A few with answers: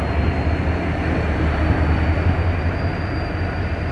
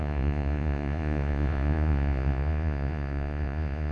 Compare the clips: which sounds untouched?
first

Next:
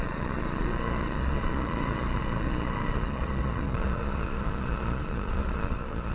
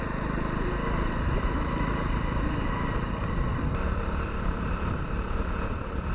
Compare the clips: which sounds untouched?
second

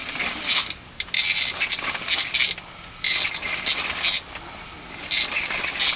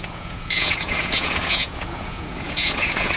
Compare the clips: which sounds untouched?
first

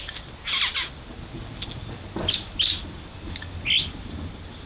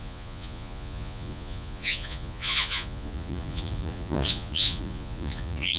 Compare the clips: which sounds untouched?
first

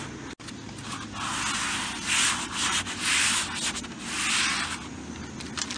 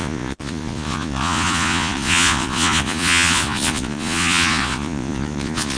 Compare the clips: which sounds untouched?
first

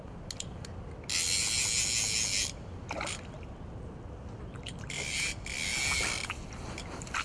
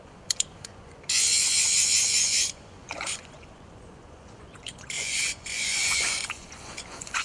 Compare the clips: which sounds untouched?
first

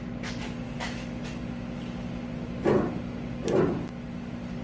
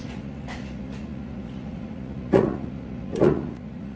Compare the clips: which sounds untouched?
first